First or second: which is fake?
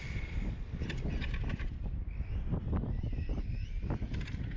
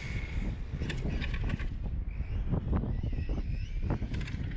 first